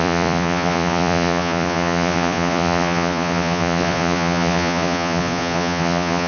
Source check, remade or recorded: remade